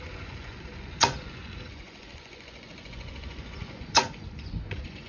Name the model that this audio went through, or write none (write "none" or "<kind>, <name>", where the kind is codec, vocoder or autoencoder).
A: vocoder, Vocos